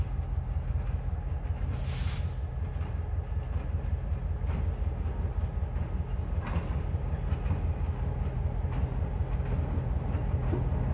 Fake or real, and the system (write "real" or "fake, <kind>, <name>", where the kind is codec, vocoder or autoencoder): real